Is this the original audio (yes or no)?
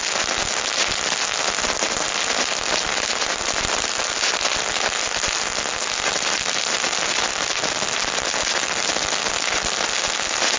yes